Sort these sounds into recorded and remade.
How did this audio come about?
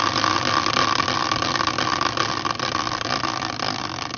recorded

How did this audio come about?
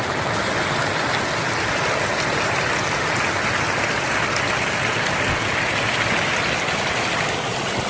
recorded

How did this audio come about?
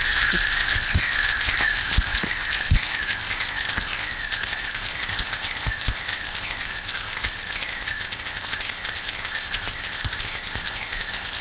remade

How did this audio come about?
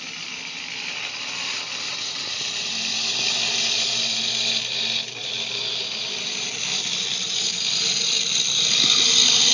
recorded